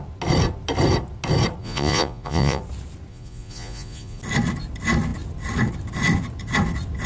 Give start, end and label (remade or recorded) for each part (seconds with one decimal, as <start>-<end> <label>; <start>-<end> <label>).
0.0-1.6 recorded; 1.6-2.6 remade; 2.6-3.1 recorded; 3.1-4.2 remade; 4.2-7.1 recorded